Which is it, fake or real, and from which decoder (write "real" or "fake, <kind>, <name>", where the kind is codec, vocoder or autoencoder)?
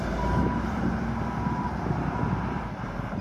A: fake, vocoder, BigVGAN v2